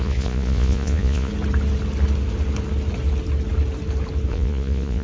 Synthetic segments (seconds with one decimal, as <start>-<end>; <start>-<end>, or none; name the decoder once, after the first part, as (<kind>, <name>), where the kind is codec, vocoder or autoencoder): 0.0-1.3 (vocoder, Vocos); 4.3-5.0